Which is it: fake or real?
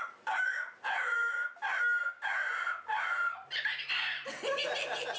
real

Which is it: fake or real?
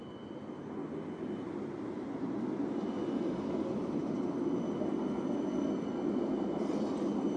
real